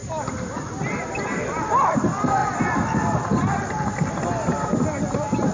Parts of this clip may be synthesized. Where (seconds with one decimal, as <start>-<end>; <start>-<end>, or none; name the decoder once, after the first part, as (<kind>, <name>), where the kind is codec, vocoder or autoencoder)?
none